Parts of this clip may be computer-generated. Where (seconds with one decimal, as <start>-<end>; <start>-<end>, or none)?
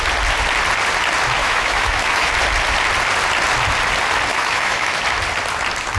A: 1.4-2.3; 4.3-5.0